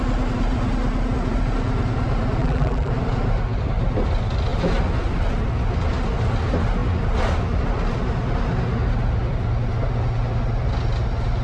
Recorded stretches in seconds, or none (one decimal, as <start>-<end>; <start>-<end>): 0.0-2.4; 2.9-11.4